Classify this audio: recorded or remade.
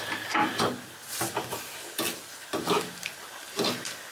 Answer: recorded